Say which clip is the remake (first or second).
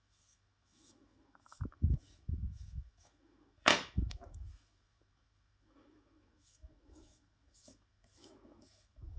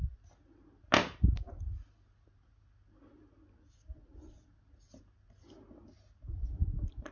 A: first